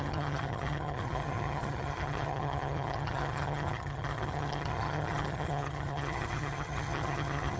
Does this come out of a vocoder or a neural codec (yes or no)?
yes